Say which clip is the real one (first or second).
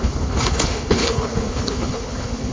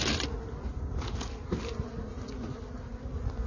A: second